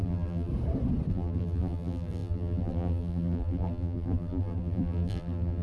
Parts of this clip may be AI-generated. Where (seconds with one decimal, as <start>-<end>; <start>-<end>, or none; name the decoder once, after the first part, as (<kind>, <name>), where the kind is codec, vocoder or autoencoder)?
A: 0.0-0.5 (vocoder, BigVGAN v2); 1.1-5.6